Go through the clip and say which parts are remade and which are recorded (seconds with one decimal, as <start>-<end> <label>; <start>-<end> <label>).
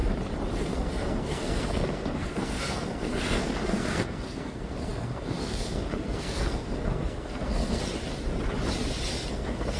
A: 0.0-0.6 recorded; 0.6-7.8 remade; 7.8-9.3 recorded; 9.3-9.8 remade